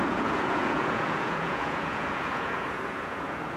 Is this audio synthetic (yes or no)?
yes